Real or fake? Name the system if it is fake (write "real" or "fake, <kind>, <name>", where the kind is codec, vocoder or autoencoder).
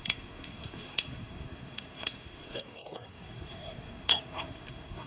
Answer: fake, codec, SNAC